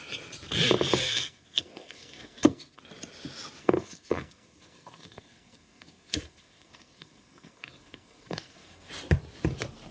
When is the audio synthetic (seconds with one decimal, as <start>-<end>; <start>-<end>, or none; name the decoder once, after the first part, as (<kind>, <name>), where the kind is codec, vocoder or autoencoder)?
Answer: 1.0-2.8 (codec, SNAC); 3.6-8.9